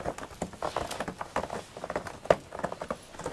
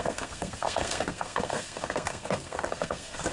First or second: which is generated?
second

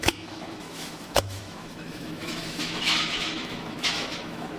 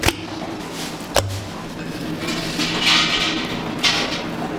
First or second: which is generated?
first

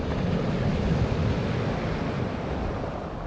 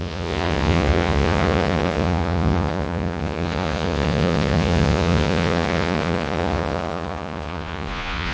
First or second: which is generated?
second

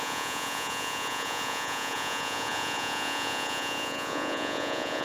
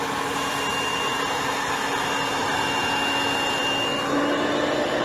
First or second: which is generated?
first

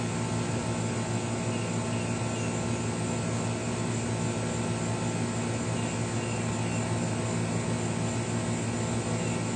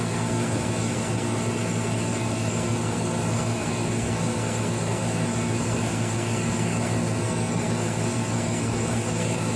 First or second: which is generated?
second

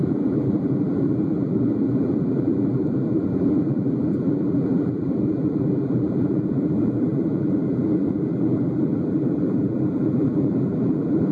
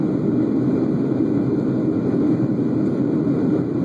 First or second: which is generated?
first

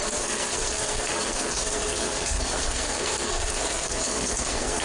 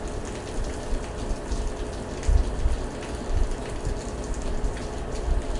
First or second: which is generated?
first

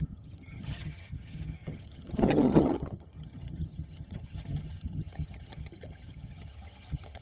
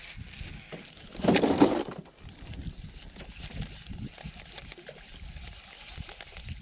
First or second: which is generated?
first